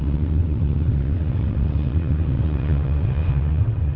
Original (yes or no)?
no